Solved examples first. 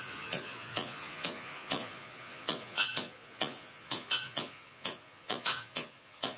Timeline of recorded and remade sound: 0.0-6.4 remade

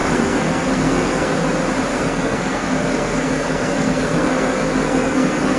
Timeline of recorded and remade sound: 0.0-1.4 remade; 1.4-1.9 recorded; 1.9-5.6 remade

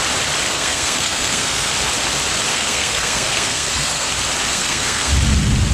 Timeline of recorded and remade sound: 0.0-0.5 recorded; 0.5-1.7 remade; 1.7-2.5 recorded; 2.5-4.1 remade; 4.1-4.5 recorded; 4.5-5.1 remade; 5.1-5.7 recorded

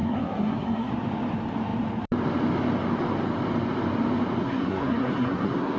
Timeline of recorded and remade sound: 0.0-0.9 remade; 0.9-4.4 recorded; 4.4-5.8 remade